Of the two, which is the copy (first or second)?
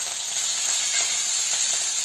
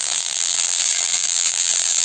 second